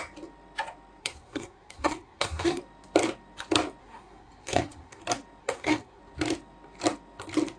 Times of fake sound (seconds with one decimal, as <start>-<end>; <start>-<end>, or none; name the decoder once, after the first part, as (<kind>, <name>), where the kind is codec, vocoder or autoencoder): 1.0-2.6 (codec, SNAC); 3.8-5.0; 5.4-6.0